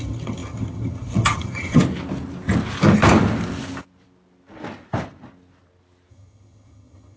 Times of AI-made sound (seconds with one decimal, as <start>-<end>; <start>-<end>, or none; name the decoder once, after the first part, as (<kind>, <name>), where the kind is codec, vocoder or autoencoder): 0.0-1.8 (vocoder, HiFi-GAN); 6.1-7.2